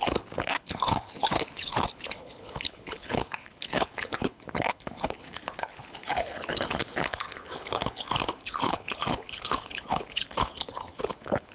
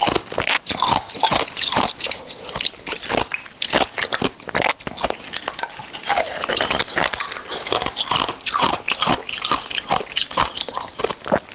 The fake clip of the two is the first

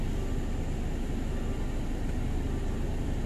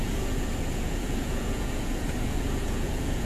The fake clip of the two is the second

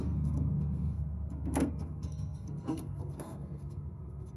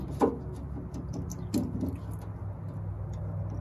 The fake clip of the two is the first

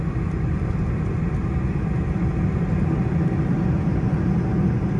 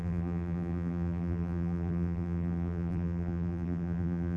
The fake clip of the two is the second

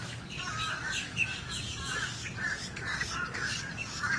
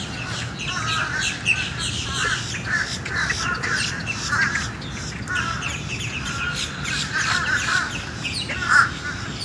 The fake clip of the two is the first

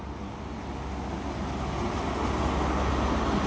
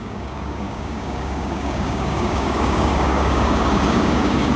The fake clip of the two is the second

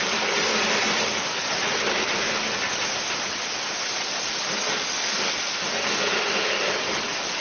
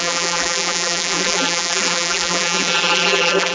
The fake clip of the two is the second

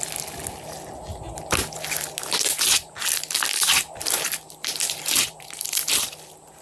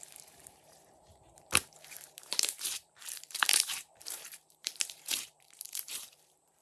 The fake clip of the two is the second